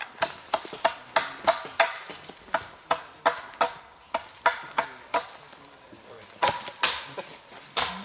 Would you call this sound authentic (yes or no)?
yes